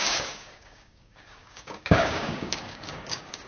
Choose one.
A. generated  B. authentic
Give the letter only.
A